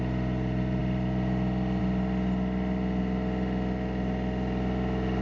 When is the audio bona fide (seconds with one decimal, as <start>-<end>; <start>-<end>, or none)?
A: 0.0-0.8; 1.8-5.2